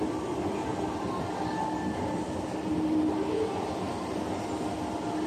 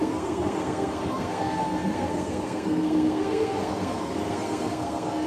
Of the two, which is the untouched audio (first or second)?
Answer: first